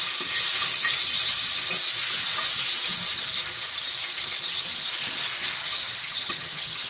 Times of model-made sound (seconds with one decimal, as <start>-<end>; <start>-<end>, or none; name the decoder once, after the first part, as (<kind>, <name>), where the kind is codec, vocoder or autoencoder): 5.6-6.9 (vocoder, HiFi-GAN)